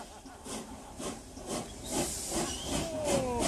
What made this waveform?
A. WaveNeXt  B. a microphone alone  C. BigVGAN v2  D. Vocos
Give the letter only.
B